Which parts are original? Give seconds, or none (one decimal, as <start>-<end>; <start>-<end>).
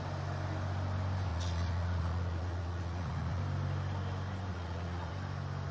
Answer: 0.0-1.3; 3.4-4.5; 5.1-5.7